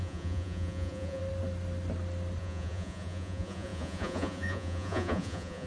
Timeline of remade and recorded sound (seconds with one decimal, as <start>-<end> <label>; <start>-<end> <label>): 0.0-1.2 remade; 1.2-2.4 recorded; 2.4-5.7 remade